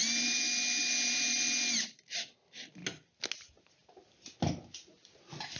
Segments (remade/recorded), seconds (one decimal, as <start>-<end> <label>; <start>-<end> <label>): 0.0-5.6 recorded